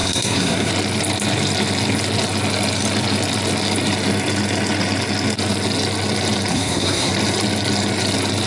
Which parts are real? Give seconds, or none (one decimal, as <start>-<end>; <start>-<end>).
0.7-6.5; 7.1-8.5